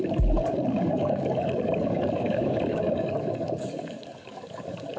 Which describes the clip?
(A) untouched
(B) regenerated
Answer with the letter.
B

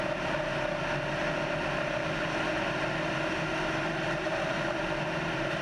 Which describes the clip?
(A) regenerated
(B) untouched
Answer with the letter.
B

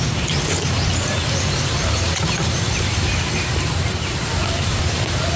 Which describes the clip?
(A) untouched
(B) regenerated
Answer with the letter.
B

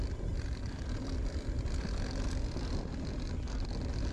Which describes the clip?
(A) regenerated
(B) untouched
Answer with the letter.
B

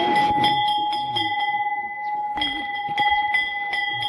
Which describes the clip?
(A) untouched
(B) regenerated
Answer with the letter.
A